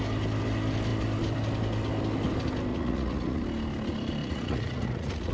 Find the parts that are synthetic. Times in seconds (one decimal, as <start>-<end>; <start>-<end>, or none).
2.7-3.4; 4.2-5.3